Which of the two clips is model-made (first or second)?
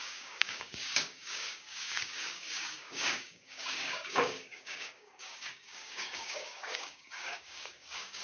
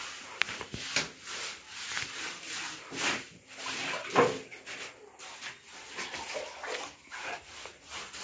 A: first